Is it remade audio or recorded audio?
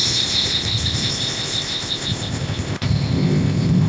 remade